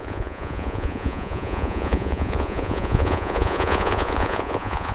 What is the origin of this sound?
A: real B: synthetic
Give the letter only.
B